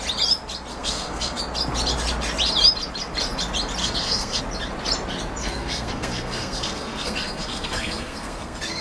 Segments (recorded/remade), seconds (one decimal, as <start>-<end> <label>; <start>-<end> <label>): 0.0-0.7 recorded; 0.7-1.4 remade; 1.4-3.8 recorded; 3.8-4.4 remade; 4.4-5.4 recorded; 5.4-8.8 remade